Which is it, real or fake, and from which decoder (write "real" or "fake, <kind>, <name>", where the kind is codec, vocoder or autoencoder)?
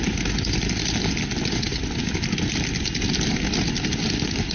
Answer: real